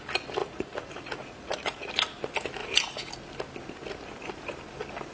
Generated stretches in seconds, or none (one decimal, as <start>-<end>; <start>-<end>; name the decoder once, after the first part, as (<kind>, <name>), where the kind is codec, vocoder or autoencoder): 0.4-1.9 (vocoder, Vocos); 2.6-3.1